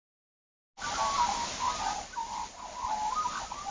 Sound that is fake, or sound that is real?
real